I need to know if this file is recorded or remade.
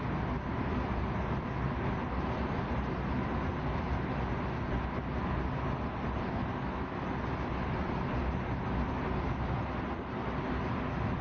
recorded